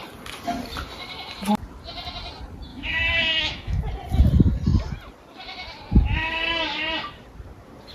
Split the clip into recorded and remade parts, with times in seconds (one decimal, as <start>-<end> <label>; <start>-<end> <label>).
0.0-2.7 recorded; 2.7-3.8 remade; 3.8-7.9 recorded